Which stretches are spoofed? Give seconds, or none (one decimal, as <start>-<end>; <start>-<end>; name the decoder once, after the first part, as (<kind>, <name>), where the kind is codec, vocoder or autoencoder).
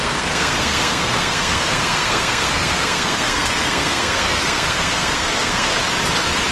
0.0-5.8 (codec, SNAC)